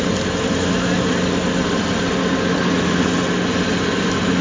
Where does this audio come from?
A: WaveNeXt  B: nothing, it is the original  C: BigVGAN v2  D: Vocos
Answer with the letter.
B